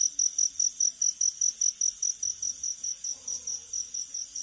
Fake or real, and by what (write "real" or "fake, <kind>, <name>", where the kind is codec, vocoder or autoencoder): real